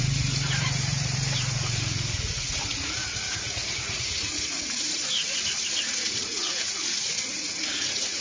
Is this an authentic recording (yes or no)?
no